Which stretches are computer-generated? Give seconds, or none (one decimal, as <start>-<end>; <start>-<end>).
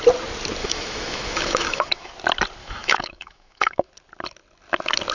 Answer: 0.6-2.1; 2.6-3.9